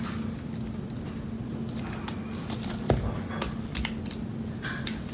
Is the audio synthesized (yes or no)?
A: no